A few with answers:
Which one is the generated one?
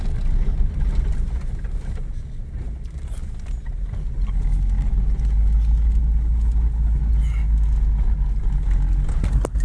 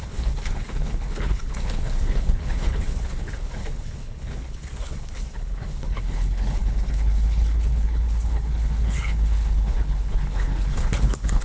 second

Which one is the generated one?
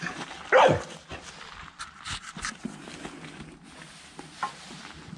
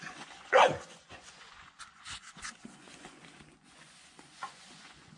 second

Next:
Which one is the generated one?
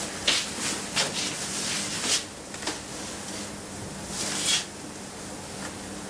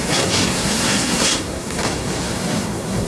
second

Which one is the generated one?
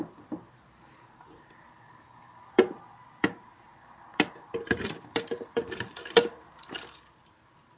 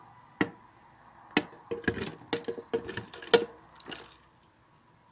first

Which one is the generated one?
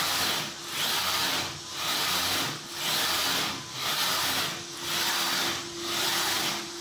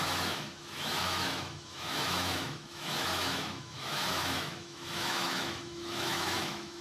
second